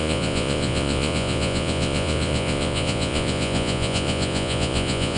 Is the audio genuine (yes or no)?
no